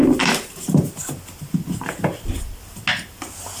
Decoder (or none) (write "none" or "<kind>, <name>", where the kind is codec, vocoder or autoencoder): none